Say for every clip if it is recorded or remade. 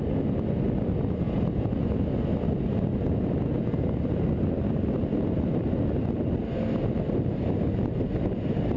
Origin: recorded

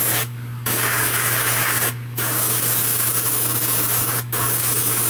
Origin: remade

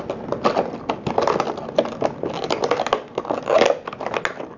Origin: recorded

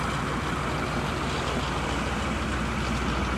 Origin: recorded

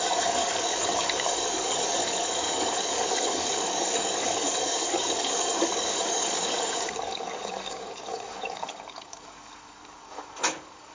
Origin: remade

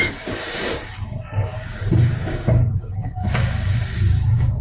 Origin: remade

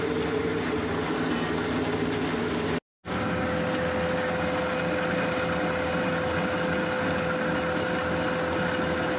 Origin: recorded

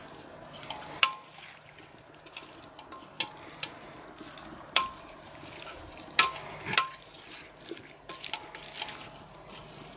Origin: recorded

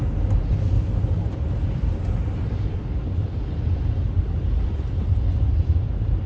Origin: recorded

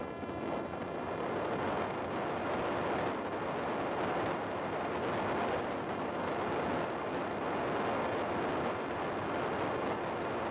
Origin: recorded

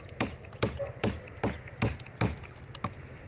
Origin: recorded